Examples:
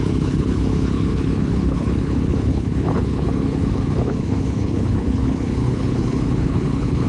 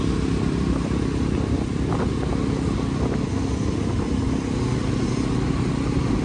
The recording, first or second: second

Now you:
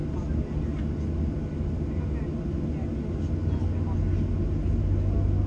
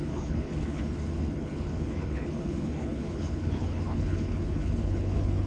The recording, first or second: first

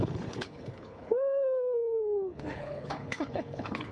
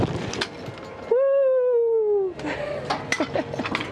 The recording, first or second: second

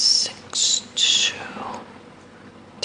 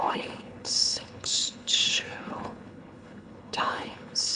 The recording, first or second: first